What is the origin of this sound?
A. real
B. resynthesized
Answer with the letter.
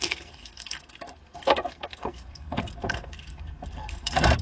B